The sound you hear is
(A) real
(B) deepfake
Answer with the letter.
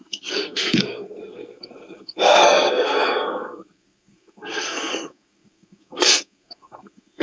B